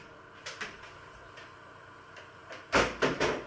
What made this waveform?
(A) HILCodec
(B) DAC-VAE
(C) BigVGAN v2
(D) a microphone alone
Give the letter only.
D